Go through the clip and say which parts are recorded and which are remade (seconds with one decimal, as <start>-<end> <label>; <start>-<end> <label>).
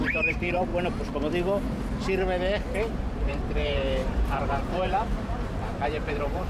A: 0.0-0.7 remade; 0.7-3.0 recorded; 3.0-6.5 remade